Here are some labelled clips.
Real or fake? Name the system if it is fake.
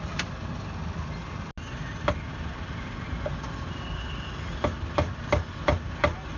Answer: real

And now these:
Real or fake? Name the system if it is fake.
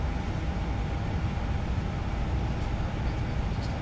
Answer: real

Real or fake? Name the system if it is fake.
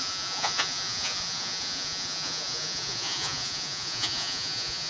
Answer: fake, vocoder, Vocos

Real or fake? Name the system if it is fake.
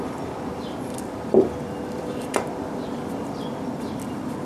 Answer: fake, vocoder, BigVGAN v2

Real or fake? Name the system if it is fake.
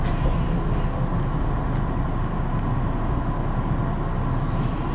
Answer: real